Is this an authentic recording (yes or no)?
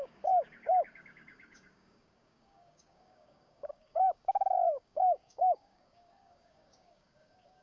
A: no